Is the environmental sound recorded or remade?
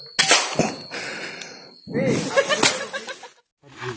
recorded